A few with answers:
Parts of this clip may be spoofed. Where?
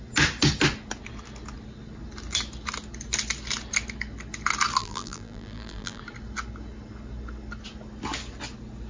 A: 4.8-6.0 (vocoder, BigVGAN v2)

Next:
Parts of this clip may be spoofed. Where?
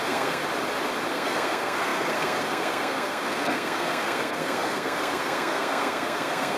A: 0.0-0.4 (codec, SNAC); 1.1-6.6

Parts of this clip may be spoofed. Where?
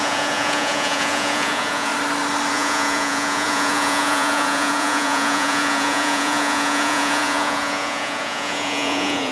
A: 0.0-1.9 (vocoder, Vocos); 2.5-9.3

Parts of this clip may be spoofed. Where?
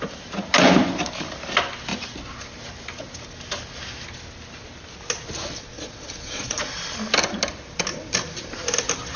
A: 5.6-6.7 (vocoder, Vocos)